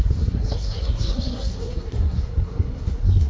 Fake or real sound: fake